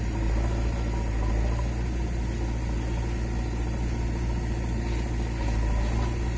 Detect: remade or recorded recorded